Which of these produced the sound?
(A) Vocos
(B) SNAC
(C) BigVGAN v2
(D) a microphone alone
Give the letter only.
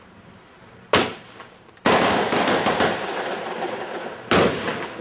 D